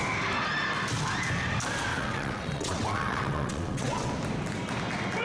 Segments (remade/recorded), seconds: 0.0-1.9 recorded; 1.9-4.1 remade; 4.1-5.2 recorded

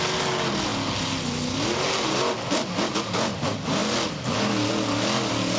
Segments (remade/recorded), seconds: 0.0-5.6 recorded

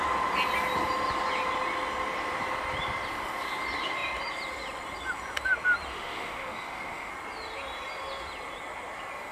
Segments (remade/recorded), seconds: 0.0-5.9 recorded; 5.9-7.1 remade; 7.1-9.3 recorded